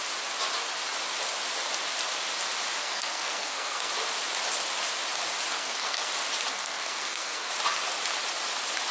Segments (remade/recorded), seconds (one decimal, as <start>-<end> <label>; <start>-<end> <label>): 0.0-2.8 recorded; 2.8-3.9 remade; 3.9-5.5 recorded; 5.5-6.1 remade; 6.1-6.5 recorded; 6.5-7.5 remade; 7.5-8.9 recorded